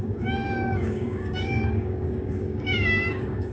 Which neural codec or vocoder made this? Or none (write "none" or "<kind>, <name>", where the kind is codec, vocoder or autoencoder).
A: codec, DAC